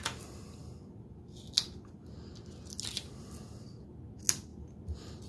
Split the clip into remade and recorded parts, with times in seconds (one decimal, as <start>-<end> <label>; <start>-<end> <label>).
0.0-5.3 recorded